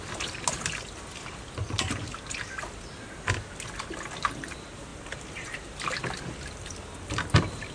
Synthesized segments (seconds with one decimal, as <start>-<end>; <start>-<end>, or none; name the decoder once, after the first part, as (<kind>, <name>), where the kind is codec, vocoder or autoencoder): 4.9-7.0 (vocoder, BigVGAN v2)